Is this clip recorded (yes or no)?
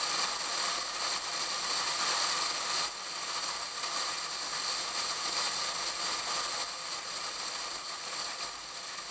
yes